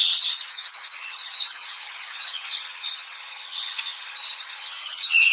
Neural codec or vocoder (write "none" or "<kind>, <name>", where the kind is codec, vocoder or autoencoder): vocoder, HiFi-GAN